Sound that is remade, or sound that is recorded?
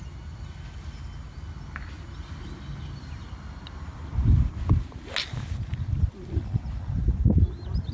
recorded